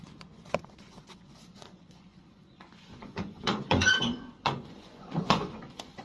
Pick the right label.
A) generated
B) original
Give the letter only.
A